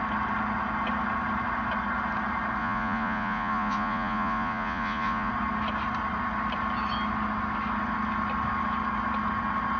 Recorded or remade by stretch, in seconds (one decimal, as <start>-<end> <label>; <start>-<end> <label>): 0.0-2.6 recorded; 2.6-5.3 remade; 5.3-9.8 recorded